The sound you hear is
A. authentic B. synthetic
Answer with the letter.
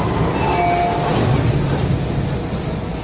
A